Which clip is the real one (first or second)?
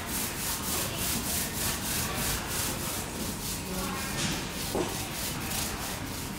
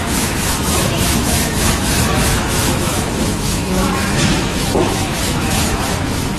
first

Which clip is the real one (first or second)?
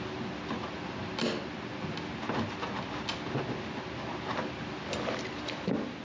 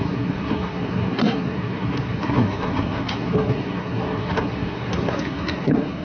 first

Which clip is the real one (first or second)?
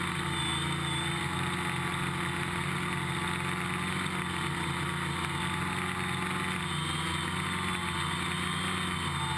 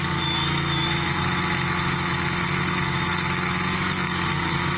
first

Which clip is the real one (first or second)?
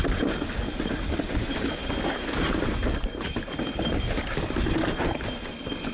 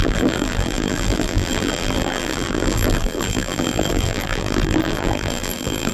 first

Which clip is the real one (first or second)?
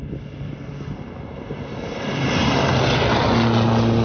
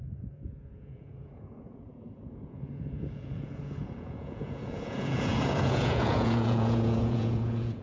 first